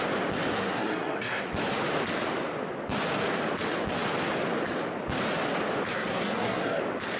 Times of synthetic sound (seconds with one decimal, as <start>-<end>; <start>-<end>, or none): 0.5-1.4; 5.9-6.8